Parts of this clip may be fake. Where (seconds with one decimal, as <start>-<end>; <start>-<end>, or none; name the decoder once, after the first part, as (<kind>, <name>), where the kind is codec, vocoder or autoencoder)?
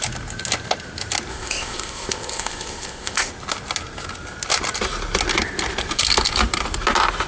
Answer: 1.3-3.3 (codec, ZipCodec)